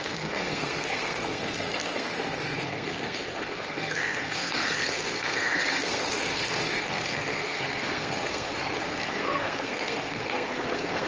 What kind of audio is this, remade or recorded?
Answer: remade